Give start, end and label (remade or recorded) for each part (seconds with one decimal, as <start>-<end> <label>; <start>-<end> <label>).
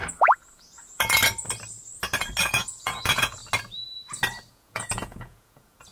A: 0.0-1.2 remade; 1.2-2.4 recorded; 2.4-3.4 remade; 3.4-4.5 recorded; 4.5-5.9 remade